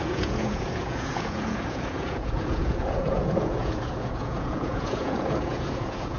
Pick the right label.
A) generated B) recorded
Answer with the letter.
A